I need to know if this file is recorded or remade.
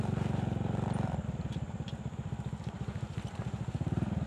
recorded